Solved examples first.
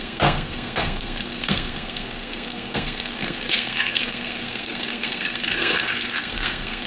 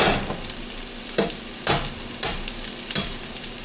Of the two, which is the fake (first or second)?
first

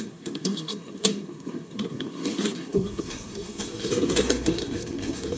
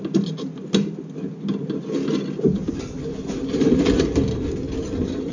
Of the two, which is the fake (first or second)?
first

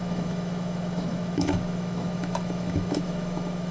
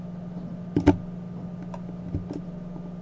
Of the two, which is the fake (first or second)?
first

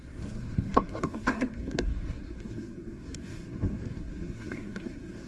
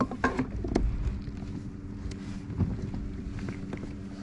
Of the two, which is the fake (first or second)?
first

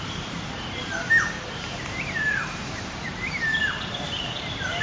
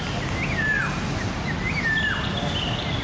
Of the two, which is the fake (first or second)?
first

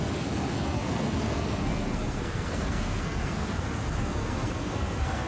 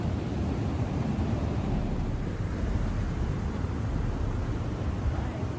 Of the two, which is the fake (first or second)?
first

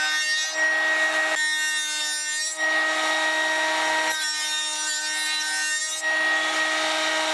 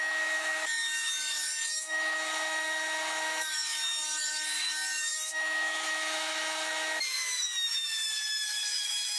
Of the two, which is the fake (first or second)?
second